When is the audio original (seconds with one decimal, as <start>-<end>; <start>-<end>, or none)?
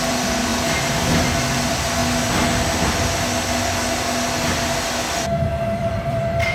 0.5-1.3; 2.0-5.5